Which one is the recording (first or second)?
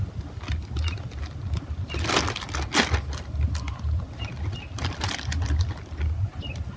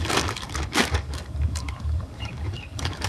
first